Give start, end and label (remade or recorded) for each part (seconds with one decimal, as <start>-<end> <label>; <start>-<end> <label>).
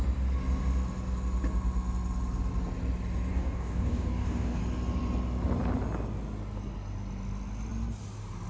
0.0-3.3 recorded; 3.3-4.6 remade; 4.6-8.5 recorded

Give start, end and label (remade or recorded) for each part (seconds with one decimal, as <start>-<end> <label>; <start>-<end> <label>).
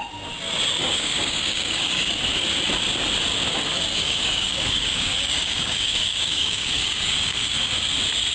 0.0-0.8 recorded; 0.8-2.1 remade; 2.1-4.0 recorded; 4.0-7.7 remade; 7.7-8.3 recorded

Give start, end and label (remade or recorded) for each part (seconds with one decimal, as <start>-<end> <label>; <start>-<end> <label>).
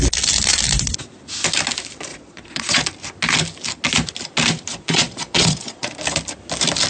0.0-2.1 recorded; 2.1-2.8 remade; 2.8-4.7 recorded; 4.7-5.9 remade; 5.9-6.9 recorded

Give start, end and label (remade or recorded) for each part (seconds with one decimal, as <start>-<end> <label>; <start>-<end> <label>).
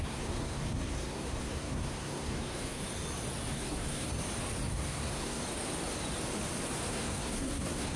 0.0-2.8 remade; 2.8-3.5 recorded; 3.5-4.1 remade; 4.1-4.7 recorded; 4.7-5.4 remade; 5.4-6.9 recorded; 6.9-8.0 remade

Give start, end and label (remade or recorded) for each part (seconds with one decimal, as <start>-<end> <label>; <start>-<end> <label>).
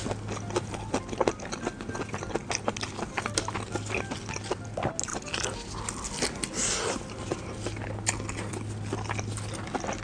0.0-10.0 recorded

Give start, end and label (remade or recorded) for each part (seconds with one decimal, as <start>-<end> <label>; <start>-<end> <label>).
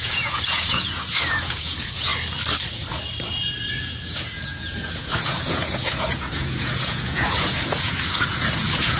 0.0-2.1 remade; 2.1-3.8 recorded; 3.8-9.0 remade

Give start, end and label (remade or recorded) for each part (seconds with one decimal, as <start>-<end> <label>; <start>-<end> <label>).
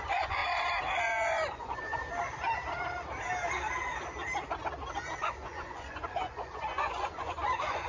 0.0-0.4 remade; 0.4-1.0 recorded; 1.0-2.0 remade; 2.0-5.2 recorded; 5.2-7.9 remade